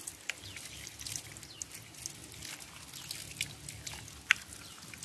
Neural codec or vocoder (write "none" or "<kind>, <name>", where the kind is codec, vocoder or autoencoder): none